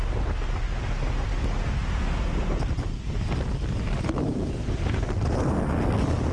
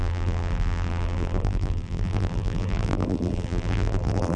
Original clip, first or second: first